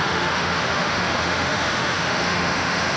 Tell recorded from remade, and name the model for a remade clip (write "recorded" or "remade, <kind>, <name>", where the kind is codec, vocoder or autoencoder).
remade, autoencoder, DAC-VAE